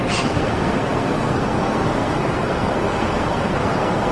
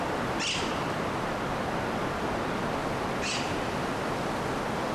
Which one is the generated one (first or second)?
first